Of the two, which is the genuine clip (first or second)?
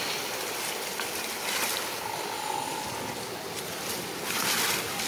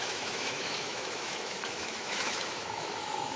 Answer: first